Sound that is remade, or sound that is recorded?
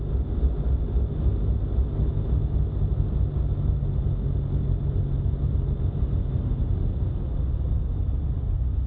recorded